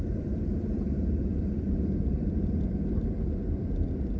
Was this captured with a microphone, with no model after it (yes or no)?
no